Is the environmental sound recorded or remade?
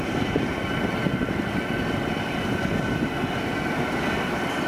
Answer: recorded